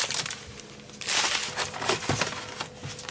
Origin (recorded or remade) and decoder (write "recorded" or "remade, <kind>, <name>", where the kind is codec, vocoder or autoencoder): recorded